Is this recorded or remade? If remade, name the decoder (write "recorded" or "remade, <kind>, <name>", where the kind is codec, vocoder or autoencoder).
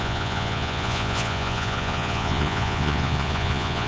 remade, vocoder, Vocos